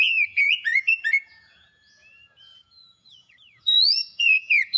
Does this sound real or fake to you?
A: fake